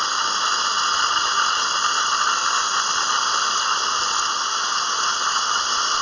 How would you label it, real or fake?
real